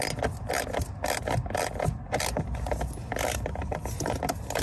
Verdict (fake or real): real